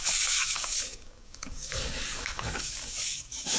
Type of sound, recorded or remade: remade